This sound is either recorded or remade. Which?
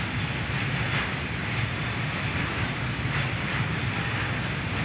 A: recorded